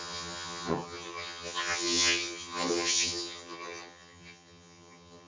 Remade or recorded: remade